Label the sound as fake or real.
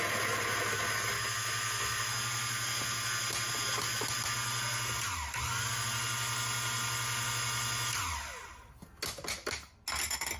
real